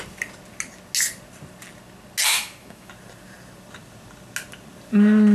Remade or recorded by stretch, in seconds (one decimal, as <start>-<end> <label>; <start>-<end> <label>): 0.0-2.3 recorded; 2.3-2.9 remade; 2.9-5.3 recorded